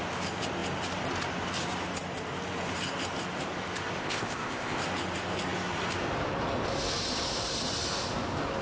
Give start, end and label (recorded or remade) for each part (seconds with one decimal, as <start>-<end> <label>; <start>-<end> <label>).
0.0-4.0 recorded; 4.0-4.8 remade; 4.8-8.6 recorded